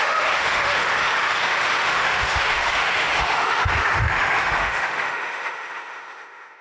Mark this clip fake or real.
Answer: fake